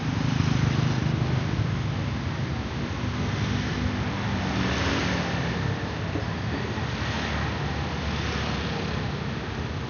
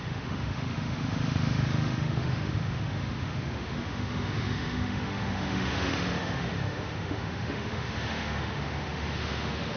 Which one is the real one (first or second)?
first